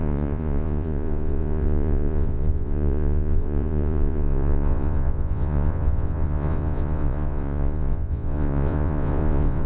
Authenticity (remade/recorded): remade